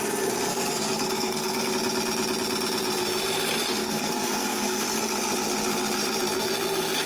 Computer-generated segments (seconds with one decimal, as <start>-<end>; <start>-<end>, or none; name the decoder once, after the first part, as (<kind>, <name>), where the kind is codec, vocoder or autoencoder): 0.5-1.7 (codec, SNAC); 3.8-4.8